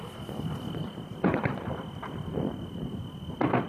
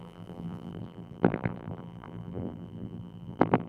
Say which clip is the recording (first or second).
first